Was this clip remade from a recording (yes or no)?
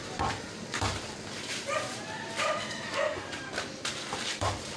yes